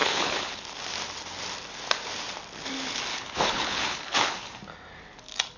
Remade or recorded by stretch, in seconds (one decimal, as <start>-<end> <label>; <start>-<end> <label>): 0.0-0.6 remade; 0.6-3.1 recorded; 3.1-4.5 remade; 4.5-5.6 recorded